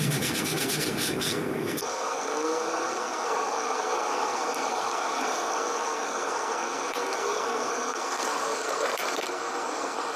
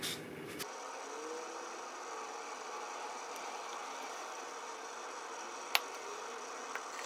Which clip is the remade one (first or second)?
first